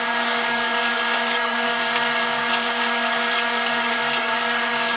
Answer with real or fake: fake